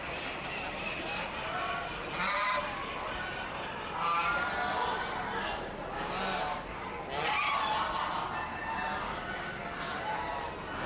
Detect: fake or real real